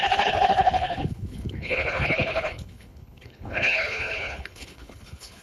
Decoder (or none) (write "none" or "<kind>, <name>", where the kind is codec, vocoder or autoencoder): codec, HILCodec